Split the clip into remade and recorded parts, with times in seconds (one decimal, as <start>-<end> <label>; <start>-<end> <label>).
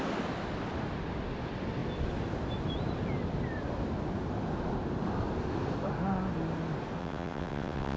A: 0.0-7.0 recorded; 7.0-8.0 remade